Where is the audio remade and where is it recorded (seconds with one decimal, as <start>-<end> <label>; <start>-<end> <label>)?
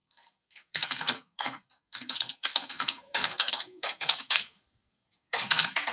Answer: 0.0-5.9 remade